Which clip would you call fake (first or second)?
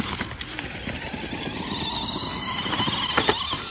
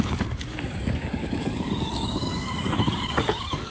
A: second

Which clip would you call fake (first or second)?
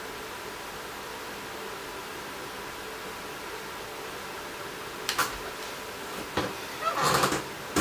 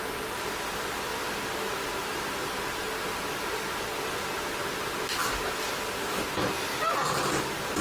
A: second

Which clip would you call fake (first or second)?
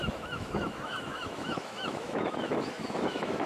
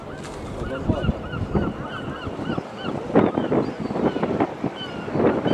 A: first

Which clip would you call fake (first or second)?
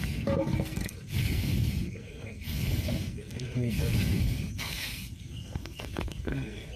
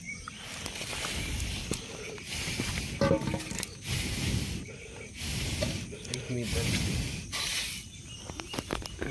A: first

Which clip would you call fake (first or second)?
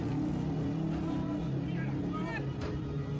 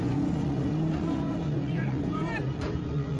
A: second